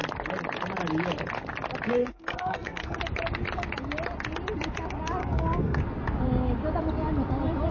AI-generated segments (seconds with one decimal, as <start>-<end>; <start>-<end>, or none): 2.0-3.0; 5.2-5.8